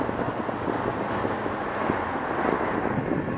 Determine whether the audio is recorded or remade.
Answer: recorded